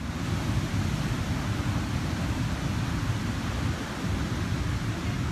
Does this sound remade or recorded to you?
recorded